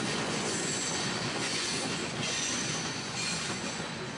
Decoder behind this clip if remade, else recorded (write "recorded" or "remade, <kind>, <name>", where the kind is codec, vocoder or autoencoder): remade, vocoder, Vocos